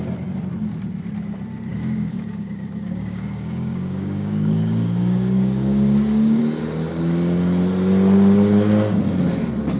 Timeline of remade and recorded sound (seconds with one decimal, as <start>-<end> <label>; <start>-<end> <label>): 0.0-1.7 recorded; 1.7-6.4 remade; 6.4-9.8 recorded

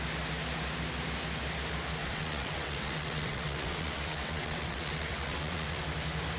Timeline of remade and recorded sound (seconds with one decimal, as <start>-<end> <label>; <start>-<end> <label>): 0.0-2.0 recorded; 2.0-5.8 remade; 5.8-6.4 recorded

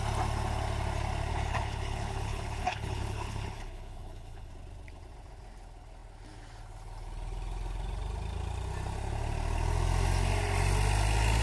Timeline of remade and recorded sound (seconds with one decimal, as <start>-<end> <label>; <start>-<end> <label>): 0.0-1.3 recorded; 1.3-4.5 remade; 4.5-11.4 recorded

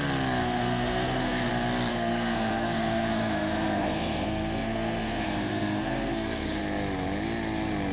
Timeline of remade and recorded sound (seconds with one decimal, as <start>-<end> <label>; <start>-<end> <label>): 0.0-0.4 recorded; 0.4-1.5 remade; 1.5-1.9 recorded; 1.9-6.6 remade; 6.6-7.9 recorded